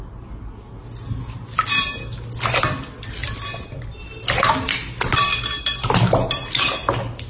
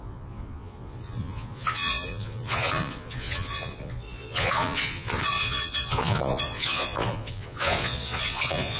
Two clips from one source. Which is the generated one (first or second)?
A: second